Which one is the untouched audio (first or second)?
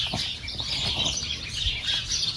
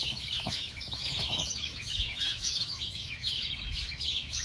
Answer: first